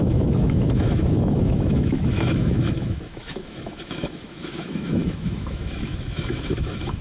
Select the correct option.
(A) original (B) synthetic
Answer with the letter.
B